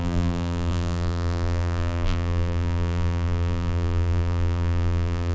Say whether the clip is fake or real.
fake